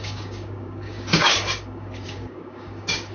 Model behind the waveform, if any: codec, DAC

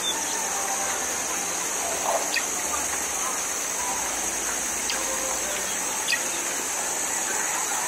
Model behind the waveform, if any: none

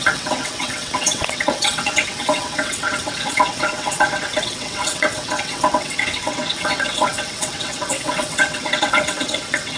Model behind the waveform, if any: vocoder, WaveNeXt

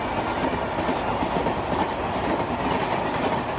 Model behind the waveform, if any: none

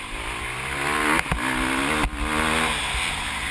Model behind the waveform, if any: none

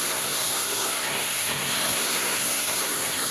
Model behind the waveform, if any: codec, SNAC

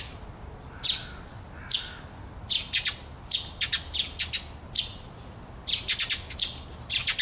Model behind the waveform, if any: none